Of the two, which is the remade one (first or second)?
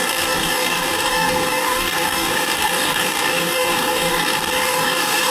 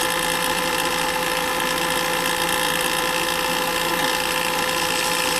first